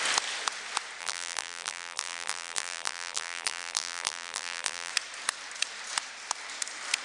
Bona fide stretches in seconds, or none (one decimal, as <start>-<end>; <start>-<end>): 0.0-1.0; 4.9-7.0